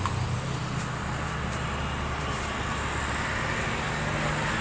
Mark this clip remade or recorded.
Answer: recorded